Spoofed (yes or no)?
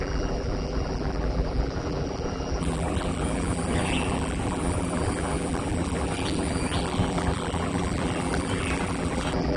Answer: yes